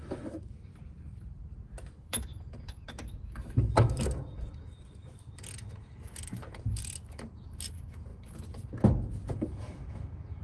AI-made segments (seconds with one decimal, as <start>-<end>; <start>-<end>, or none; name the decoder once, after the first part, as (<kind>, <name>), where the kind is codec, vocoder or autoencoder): 0.0-0.7 (autoencoder, DAC-VAE); 1.9-10.4